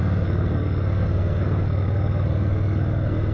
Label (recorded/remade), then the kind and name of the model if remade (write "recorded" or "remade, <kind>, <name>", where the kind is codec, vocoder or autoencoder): remade, codec, SNAC